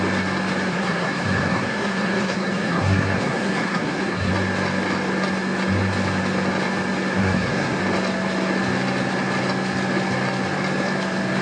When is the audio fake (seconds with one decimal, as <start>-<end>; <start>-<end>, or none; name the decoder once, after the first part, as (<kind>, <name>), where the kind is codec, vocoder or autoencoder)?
0.7-4.3 (codec, SNAC); 7.2-7.8